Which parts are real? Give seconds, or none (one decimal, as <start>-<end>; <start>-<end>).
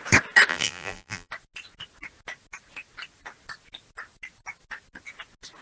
0.0-0.5; 1.3-5.6